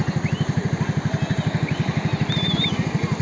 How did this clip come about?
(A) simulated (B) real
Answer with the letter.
B